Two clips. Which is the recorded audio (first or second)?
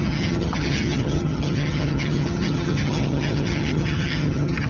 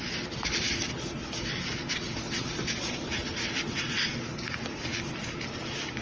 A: second